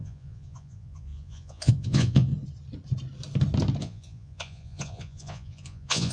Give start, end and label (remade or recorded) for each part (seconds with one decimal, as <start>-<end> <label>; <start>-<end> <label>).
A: 0.0-2.3 remade; 2.3-3.8 recorded; 3.8-6.1 remade